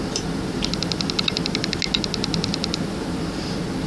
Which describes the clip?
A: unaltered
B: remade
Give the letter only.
A